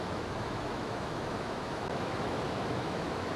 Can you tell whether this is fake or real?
fake